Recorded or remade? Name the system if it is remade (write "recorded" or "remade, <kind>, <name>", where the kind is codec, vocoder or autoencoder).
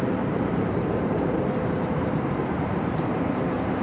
remade, vocoder, BigVGAN v2